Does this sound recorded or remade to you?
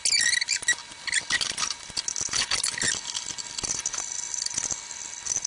recorded